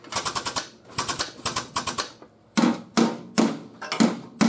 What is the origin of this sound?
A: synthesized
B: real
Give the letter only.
B